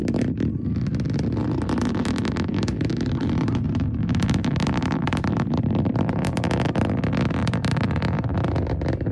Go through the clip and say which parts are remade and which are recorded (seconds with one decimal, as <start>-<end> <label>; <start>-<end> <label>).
0.0-0.7 remade; 0.7-1.4 recorded; 1.4-6.5 remade; 6.5-7.4 recorded; 7.4-8.5 remade; 8.5-9.1 recorded